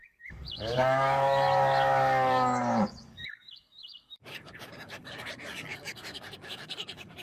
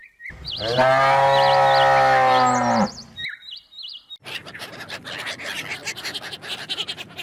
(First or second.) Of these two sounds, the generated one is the first